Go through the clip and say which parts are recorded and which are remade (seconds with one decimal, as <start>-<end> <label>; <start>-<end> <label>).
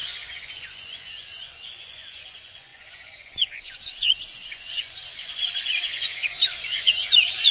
0.0-7.5 remade